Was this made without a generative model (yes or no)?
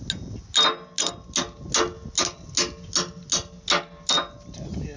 yes